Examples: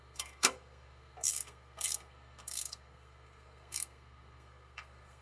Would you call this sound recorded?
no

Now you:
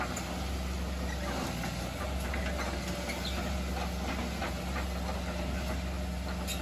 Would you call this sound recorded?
yes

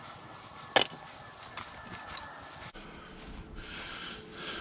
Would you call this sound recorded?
yes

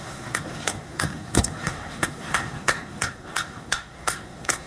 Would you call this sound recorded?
no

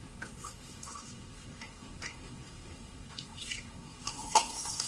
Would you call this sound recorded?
no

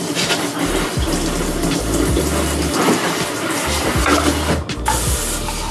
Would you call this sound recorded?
yes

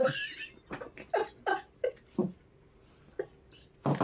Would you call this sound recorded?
yes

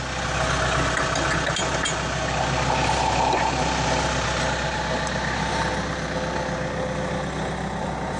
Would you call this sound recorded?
yes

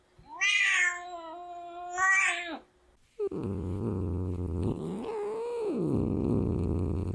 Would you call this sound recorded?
yes